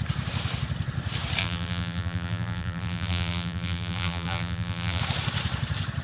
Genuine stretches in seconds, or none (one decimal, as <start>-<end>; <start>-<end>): 0.0-1.4; 5.0-6.0